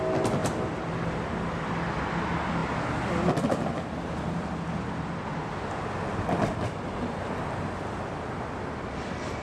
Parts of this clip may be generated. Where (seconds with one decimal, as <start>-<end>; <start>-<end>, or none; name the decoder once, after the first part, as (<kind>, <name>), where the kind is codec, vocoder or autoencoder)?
none